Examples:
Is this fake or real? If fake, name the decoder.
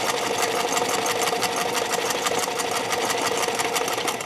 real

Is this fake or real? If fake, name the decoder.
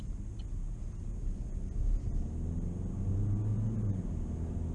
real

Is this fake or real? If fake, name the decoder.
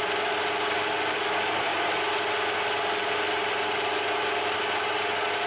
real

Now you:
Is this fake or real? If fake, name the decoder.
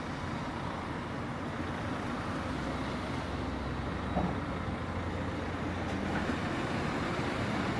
real